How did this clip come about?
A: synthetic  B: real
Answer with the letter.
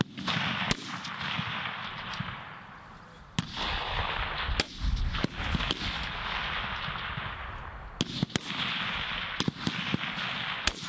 B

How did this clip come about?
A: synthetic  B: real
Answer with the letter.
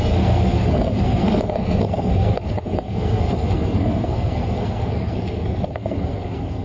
A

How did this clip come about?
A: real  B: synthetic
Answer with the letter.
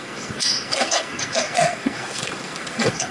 B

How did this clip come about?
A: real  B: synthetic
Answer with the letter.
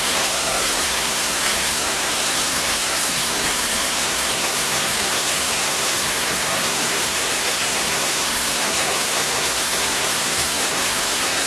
B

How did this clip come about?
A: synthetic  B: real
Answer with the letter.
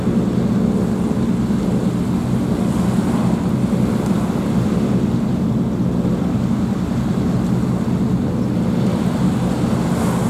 B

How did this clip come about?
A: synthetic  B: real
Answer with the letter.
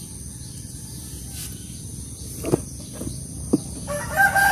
B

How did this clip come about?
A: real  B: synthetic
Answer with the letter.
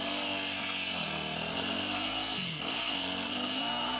B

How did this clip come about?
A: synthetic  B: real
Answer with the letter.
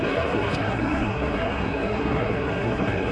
A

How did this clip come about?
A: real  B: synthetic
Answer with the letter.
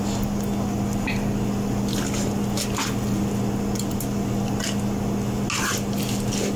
A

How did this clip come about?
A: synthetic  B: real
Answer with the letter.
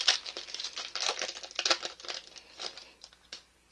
B